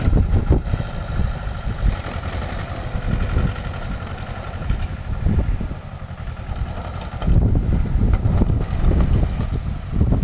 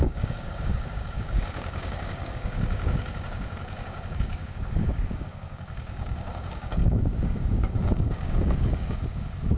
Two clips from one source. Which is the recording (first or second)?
first